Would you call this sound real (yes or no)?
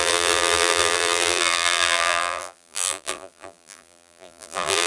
no